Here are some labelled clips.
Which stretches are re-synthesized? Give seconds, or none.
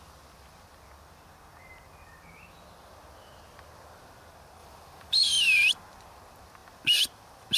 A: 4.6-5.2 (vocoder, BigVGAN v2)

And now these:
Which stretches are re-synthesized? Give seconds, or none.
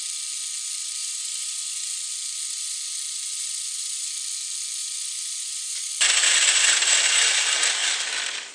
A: 1.0-2.1 (vocoder, BigVGAN v2); 4.8-5.9; 7.8-8.5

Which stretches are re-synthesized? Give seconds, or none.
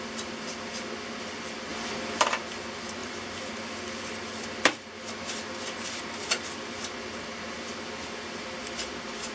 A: 3.0-3.5 (vocoder, BigVGAN v2)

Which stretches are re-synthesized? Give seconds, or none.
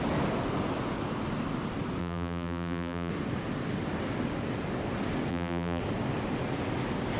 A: 2.0-3.1 (vocoder, BigVGAN v2); 5.3-5.8